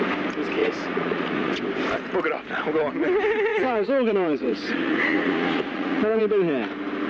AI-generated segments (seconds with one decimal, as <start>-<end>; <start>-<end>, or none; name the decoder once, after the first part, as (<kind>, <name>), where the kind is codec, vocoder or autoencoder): 0.6-1.6 (vocoder, Vocos); 3.5-6.2